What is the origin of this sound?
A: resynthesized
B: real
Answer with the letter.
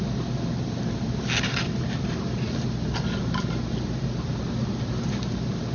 B